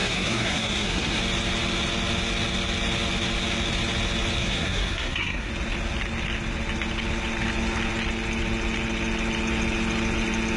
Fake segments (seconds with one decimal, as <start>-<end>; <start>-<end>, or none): 0.0-1.2; 4.4-5.5